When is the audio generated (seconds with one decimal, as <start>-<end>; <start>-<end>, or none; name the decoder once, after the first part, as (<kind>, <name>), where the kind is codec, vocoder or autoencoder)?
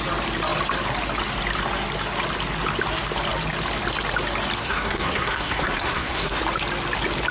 4.6-6.4 (codec, SNAC)